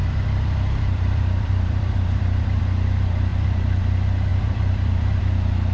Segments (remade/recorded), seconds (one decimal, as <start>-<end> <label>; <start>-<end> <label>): 0.0-2.6 remade; 2.6-3.3 recorded; 3.3-3.8 remade; 3.8-4.3 recorded; 4.3-5.2 remade; 5.2-5.7 recorded

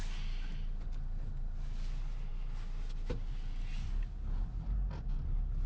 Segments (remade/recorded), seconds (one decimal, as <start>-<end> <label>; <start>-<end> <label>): 0.0-5.7 recorded